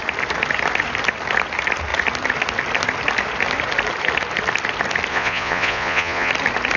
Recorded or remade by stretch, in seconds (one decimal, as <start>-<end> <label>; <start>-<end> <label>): 0.0-5.1 recorded; 5.1-6.3 remade; 6.3-6.8 recorded